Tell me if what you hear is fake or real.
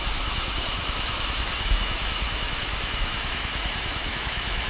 fake